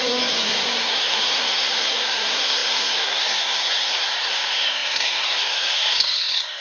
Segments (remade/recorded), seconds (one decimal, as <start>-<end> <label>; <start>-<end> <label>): 0.0-6.6 remade